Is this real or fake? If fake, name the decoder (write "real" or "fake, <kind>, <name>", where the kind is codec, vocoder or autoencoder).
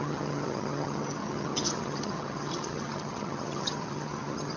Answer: fake, vocoder, HiFi-GAN